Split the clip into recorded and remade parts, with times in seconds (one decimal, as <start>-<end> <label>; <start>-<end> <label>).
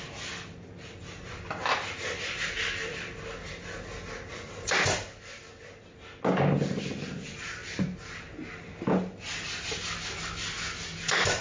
0.0-11.4 recorded